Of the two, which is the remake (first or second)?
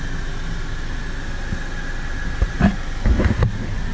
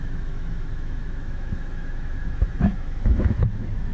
second